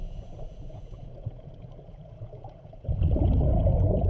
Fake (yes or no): yes